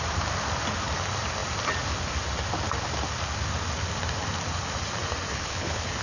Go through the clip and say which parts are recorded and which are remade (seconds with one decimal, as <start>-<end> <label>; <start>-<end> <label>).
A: 0.0-5.3 recorded; 5.3-6.0 remade